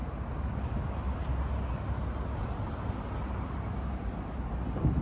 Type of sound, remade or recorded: recorded